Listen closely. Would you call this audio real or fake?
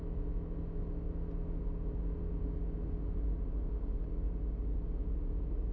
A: real